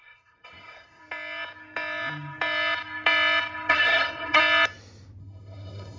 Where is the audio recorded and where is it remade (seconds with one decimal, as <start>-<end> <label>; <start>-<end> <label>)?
0.0-1.0 remade; 1.0-3.7 recorded; 3.7-4.4 remade; 4.4-5.2 recorded; 5.2-6.0 remade